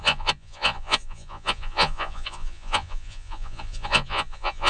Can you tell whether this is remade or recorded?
remade